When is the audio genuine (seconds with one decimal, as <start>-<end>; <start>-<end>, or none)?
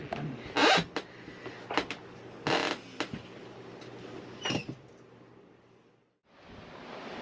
0.0-7.2